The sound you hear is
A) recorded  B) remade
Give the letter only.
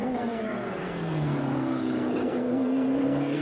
B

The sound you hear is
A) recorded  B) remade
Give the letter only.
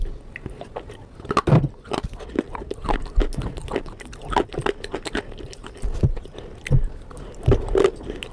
A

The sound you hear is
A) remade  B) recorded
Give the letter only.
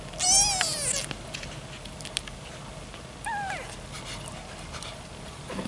B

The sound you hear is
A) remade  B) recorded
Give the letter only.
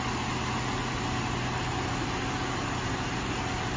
B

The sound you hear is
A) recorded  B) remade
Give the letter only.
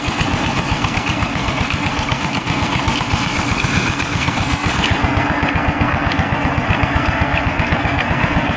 B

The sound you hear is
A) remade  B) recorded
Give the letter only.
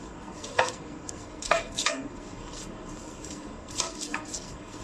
A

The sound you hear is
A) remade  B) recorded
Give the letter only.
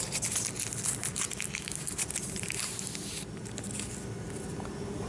B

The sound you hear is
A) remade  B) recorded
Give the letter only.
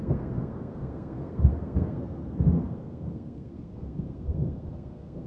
A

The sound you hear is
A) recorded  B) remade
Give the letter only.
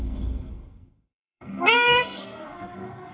B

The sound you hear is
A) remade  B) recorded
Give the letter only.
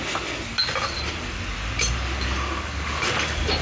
B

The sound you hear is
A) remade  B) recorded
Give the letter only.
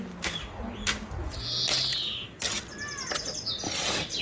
B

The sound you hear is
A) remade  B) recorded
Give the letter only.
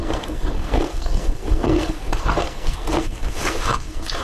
A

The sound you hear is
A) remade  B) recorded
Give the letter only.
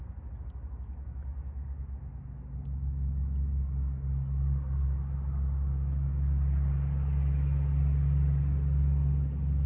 B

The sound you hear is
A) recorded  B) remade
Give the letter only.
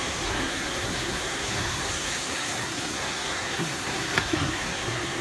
B